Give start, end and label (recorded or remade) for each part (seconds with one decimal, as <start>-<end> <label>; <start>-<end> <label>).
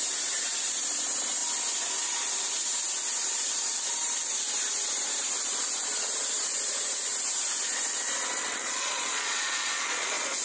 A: 0.0-8.6 recorded; 8.6-10.4 remade